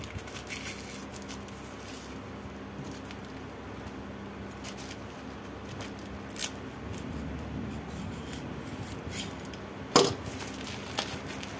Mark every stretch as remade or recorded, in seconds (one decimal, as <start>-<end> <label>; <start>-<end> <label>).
0.0-11.6 recorded